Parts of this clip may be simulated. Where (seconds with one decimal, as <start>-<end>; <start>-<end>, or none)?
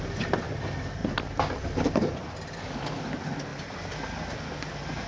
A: none